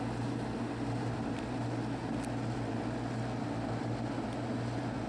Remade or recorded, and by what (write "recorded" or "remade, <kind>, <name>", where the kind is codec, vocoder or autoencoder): recorded